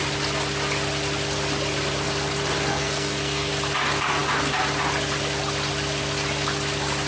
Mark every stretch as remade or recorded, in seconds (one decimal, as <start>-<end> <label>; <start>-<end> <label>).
0.0-2.7 recorded; 2.7-3.5 remade; 3.5-7.1 recorded